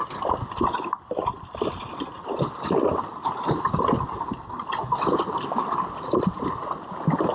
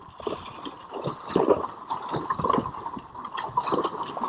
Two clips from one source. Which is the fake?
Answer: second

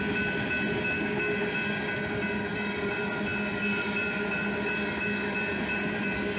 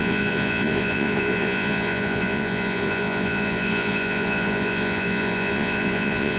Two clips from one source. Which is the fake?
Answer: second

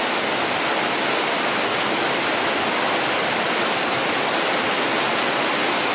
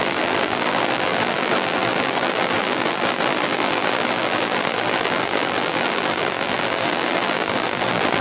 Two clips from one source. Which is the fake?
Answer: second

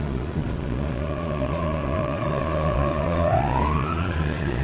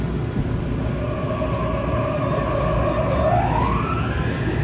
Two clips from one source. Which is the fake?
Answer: first